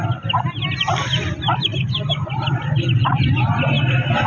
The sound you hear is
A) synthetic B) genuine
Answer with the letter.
B